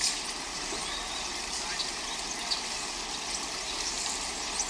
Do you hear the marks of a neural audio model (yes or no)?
no